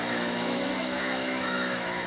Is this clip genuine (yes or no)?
no